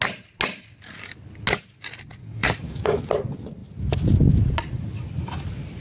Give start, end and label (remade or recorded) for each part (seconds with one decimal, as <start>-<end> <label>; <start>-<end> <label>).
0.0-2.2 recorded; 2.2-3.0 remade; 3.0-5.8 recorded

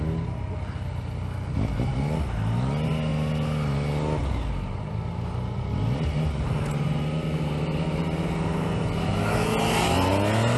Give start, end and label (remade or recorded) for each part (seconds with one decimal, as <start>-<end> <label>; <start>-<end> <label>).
0.0-10.6 recorded

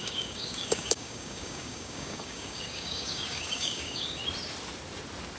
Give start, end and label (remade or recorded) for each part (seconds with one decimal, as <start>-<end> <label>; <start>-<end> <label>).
0.0-4.2 remade; 4.2-5.4 recorded

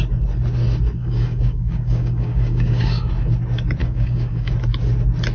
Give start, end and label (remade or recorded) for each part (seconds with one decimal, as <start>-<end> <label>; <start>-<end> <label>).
0.0-1.0 recorded; 1.0-3.1 remade; 3.1-3.8 recorded; 3.8-4.5 remade; 4.5-5.3 recorded

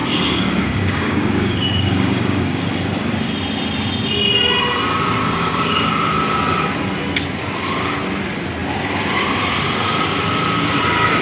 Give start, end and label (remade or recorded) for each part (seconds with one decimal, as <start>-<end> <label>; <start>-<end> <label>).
0.0-2.8 remade; 2.8-5.2 recorded; 5.2-5.9 remade; 5.9-11.2 recorded

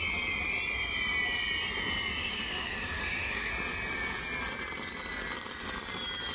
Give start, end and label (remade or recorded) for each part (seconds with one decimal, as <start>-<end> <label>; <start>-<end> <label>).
0.0-2.2 recorded; 2.2-3.5 remade; 3.5-6.3 recorded

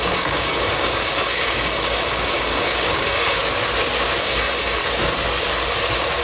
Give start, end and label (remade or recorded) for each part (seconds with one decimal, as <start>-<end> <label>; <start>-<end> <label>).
0.0-3.4 remade; 3.4-4.2 recorded; 4.2-4.8 remade; 4.8-6.2 recorded

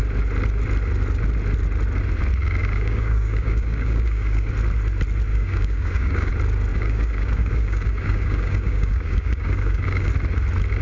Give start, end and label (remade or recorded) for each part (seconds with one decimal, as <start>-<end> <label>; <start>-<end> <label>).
0.0-2.6 recorded; 2.6-4.5 remade; 4.5-5.3 recorded; 5.3-6.3 remade; 6.3-6.7 recorded; 6.7-10.1 remade; 10.1-10.8 recorded